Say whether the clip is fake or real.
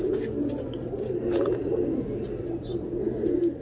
real